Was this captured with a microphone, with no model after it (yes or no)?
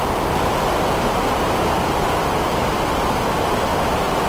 yes